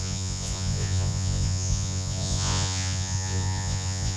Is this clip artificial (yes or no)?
yes